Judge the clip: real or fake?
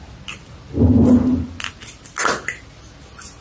real